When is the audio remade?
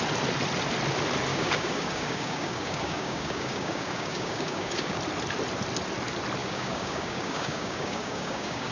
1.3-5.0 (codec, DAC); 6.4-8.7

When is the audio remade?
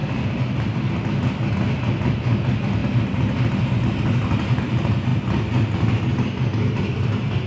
0.0-0.9 (vocoder, BigVGAN v2); 6.5-7.5